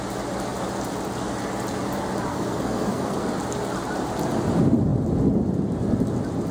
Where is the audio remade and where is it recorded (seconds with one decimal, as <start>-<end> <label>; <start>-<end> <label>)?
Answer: 0.0-2.3 recorded; 2.3-3.3 remade; 3.3-6.5 recorded